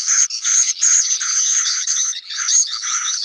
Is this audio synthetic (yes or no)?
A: yes